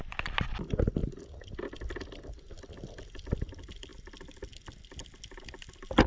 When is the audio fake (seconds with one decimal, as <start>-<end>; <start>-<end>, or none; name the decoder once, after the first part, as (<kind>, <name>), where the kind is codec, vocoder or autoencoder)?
none